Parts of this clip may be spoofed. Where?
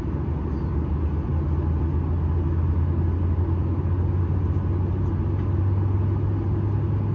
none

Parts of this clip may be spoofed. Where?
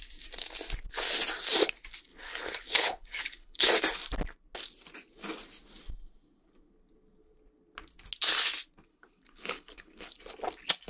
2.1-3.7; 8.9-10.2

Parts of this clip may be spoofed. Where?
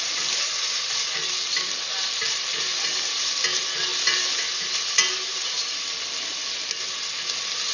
none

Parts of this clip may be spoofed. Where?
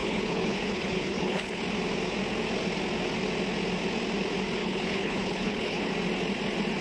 0.0-1.6; 4.6-5.9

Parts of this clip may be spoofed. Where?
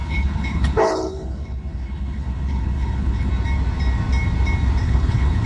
0.0-3.3; 4.8-5.5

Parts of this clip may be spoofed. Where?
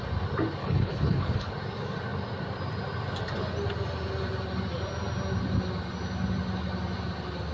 0.6-1.5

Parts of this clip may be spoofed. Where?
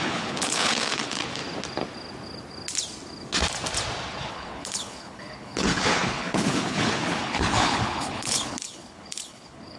0.0-1.4; 4.3-9.8